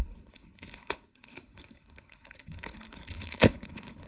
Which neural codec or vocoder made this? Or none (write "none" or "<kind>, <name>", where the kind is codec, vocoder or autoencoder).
codec, HILCodec